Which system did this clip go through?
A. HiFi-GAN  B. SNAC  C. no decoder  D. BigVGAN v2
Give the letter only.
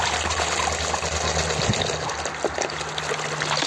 C